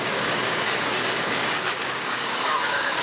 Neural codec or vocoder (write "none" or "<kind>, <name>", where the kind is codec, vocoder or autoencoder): codec, DAC